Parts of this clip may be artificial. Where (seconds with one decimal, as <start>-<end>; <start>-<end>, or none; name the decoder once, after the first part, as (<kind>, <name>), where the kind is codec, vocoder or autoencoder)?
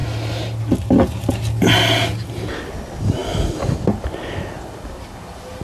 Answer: 3.2-4.0 (vocoder, BigVGAN v2)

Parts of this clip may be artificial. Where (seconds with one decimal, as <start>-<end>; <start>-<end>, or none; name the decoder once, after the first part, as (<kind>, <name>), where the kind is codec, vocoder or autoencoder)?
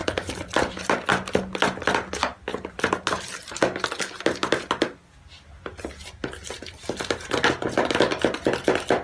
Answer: 0.0-1.1 (vocoder, BigVGAN v2); 2.5-3.5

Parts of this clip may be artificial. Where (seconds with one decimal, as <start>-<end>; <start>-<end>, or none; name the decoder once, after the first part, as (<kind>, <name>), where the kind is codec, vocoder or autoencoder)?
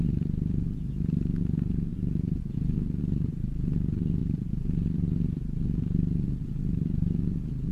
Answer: 1.9-2.4 (vocoder, BigVGAN v2); 4.2-5.4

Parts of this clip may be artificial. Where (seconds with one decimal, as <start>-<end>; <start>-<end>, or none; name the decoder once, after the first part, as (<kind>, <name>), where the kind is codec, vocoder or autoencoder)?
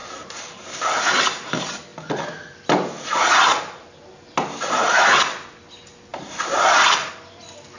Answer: 0.0-1.5 (vocoder, BigVGAN v2); 6.1-7.1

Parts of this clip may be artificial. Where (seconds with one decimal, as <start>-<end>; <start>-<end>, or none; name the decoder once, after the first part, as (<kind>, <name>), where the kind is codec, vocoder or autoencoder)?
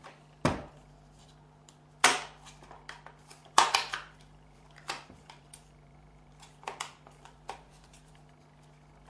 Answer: 3.4-8.1 (vocoder, BigVGAN v2)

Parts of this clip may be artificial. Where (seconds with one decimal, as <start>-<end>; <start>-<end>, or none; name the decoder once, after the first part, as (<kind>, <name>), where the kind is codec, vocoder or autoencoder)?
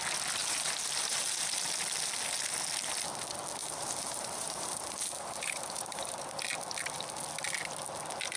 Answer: 0.4-1.5 (vocoder, BigVGAN v2); 3.6-6.2